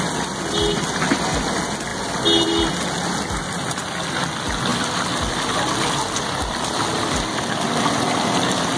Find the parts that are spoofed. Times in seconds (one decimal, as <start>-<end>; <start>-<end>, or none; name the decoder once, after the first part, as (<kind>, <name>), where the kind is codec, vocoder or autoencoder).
none